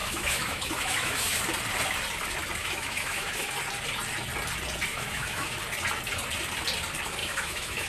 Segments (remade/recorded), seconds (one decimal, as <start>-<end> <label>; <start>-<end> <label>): 0.0-1.4 remade; 1.4-2.6 recorded; 2.6-3.5 remade; 3.5-4.9 recorded; 4.9-5.6 remade; 5.6-7.2 recorded; 7.2-7.9 remade